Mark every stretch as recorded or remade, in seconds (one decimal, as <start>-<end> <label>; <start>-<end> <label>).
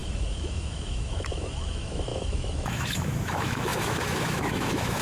0.0-5.0 remade